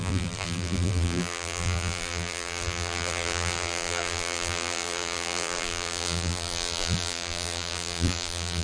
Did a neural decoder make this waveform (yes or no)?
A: yes